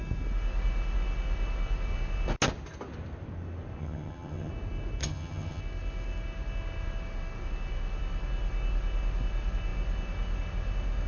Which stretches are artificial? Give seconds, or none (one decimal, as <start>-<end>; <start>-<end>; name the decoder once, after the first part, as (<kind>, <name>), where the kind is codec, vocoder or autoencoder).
3.8-4.5 (vocoder, HiFi-GAN); 5.0-5.6